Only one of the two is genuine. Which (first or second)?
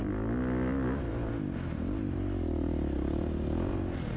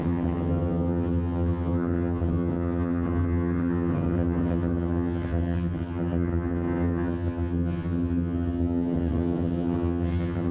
first